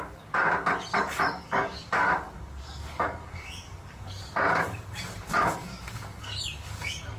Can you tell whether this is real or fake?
fake